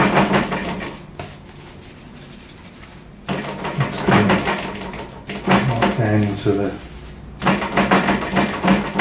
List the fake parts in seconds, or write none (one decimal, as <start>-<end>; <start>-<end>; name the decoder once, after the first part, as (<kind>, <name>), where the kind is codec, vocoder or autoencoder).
6.5-7.5 (vocoder, BigVGAN v2)